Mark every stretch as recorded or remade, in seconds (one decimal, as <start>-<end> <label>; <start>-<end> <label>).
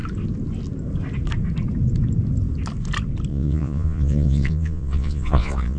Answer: 0.0-3.3 recorded; 3.3-5.8 remade